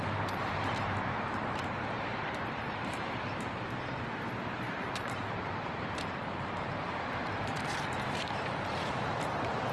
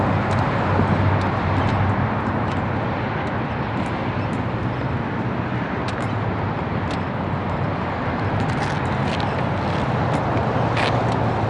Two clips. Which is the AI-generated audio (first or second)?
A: first